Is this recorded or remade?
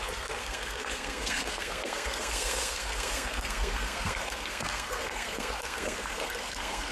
remade